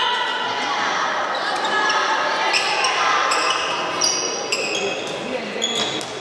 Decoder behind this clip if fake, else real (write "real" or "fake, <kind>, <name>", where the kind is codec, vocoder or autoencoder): real